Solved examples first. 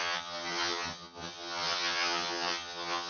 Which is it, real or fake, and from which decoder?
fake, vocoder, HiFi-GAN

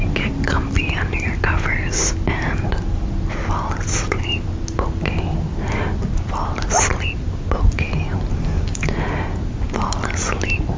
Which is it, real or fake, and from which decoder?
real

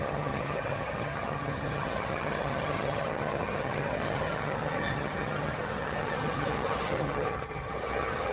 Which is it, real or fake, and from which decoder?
fake, vocoder, HiFi-GAN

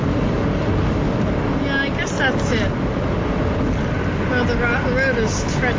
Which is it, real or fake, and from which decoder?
real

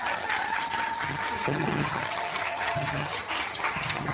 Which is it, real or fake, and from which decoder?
fake, vocoder, HiFi-GAN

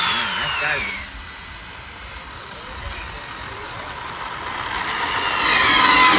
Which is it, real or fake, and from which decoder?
real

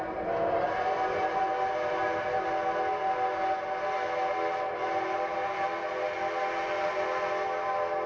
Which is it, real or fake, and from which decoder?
real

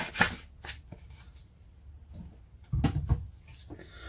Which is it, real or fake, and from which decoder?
real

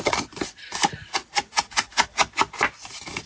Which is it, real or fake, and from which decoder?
real